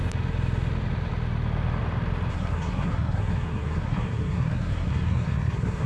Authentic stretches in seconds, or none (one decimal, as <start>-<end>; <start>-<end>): 0.0-2.3